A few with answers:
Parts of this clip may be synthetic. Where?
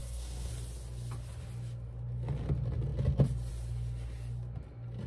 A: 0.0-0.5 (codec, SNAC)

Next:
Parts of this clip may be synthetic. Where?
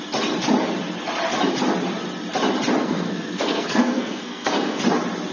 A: 2.8-4.8 (codec, SNAC)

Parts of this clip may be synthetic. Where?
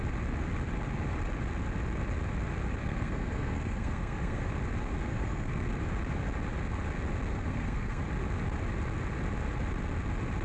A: 2.8-4.5 (codec, SNAC); 5.1-5.7; 7.3-8.0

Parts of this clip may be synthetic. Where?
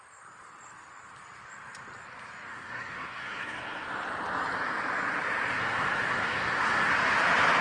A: 2.5-3.9 (codec, SNAC); 5.6-6.9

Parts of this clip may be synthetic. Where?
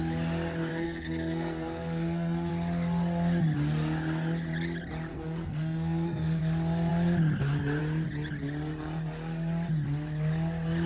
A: 0.7-2.5 (codec, SNAC); 5.1-6.4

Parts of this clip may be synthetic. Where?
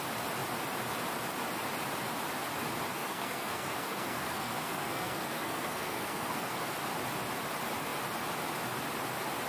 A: 2.9-6.7 (codec, SNAC)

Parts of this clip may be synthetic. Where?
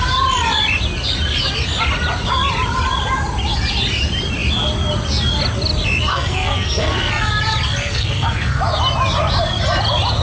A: 6.1-7.3 (codec, SNAC); 7.8-8.6